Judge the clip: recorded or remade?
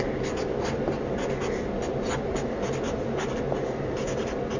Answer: recorded